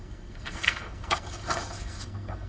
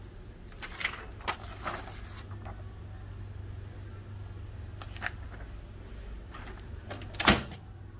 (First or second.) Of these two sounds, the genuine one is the second